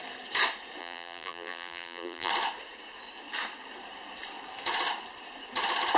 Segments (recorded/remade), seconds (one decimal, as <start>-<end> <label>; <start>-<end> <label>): 0.0-0.8 recorded; 0.8-2.3 remade; 2.3-6.0 recorded